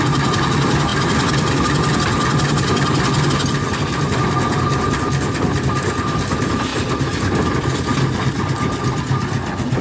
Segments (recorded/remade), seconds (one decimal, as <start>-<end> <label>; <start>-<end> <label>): 0.0-9.8 recorded